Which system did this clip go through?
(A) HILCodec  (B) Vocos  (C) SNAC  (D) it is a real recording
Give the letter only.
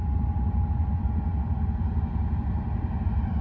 D